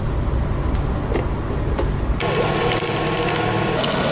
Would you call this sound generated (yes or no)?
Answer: no